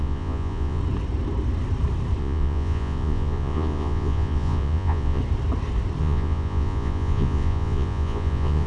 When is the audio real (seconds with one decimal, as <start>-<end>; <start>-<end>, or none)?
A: 0.8-2.2; 5.2-6.0